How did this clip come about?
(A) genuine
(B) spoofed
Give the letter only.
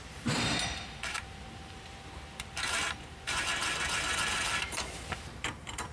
B